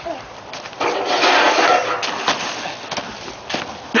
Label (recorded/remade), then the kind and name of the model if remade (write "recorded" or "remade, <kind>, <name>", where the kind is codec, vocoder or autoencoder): recorded